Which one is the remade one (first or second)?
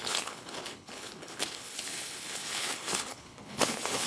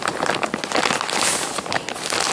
first